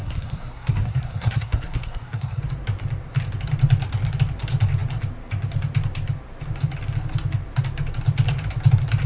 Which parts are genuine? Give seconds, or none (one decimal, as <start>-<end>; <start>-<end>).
2.4-9.1